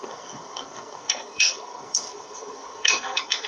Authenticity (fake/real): fake